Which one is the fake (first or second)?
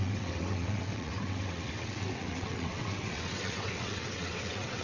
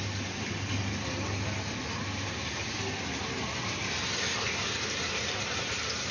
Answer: first